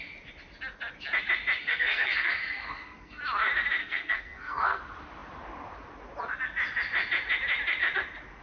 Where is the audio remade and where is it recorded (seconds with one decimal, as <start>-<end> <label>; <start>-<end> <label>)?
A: 0.0-1.6 recorded; 1.6-3.2 remade; 3.2-3.8 recorded; 3.8-4.8 remade; 4.8-8.4 recorded